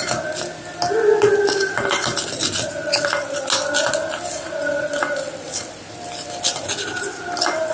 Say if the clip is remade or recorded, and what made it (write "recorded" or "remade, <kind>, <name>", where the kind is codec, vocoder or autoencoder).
recorded